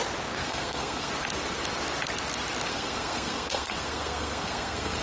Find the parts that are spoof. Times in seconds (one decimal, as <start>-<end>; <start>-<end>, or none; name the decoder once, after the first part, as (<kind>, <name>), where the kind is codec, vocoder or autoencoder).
0.4-1.1 (codec, SNAC); 2.7-5.0